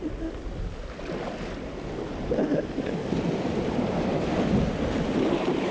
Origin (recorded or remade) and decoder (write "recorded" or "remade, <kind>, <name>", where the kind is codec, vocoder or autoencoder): recorded